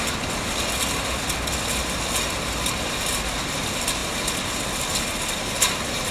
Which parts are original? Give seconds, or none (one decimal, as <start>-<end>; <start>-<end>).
0.0-6.1